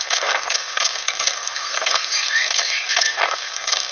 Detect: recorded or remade remade